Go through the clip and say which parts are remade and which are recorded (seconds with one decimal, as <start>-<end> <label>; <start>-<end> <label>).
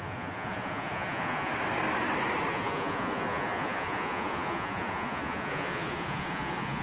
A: 0.0-1.5 remade; 1.5-2.5 recorded; 2.5-6.8 remade